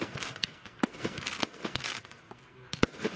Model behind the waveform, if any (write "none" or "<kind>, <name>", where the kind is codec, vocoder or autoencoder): codec, SNAC